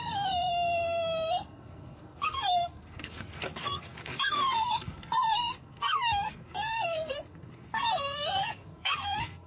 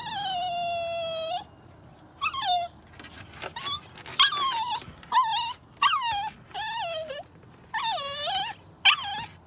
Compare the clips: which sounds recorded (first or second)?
second